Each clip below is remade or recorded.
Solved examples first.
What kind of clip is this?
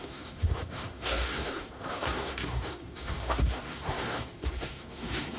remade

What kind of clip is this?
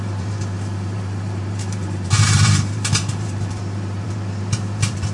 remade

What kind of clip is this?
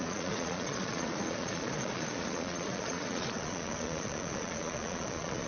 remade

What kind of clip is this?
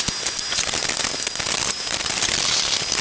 recorded